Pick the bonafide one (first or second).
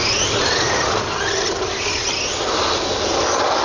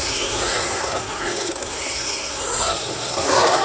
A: first